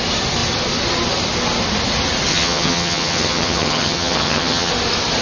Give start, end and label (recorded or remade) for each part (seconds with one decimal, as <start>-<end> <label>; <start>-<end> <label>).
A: 0.0-2.3 recorded; 2.3-4.7 remade; 4.7-5.2 recorded